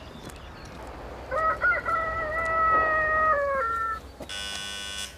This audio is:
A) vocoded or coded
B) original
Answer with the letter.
B